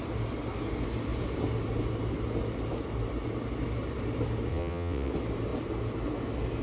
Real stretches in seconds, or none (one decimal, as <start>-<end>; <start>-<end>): 0.0-4.5; 5.1-6.6